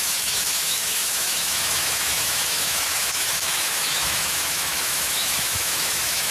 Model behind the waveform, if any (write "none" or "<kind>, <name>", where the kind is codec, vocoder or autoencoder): autoencoder, DAC-VAE